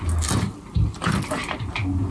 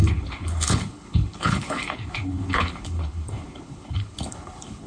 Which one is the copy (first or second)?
second